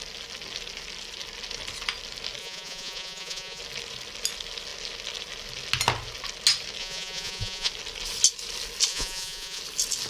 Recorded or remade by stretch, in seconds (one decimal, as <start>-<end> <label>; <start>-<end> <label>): 0.0-2.4 recorded; 2.4-3.6 remade; 3.6-6.8 recorded; 6.8-7.7 remade; 7.7-8.9 recorded; 8.9-9.6 remade; 9.6-10.1 recorded